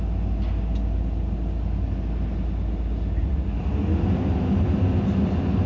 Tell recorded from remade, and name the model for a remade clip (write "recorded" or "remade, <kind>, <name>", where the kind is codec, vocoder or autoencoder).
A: recorded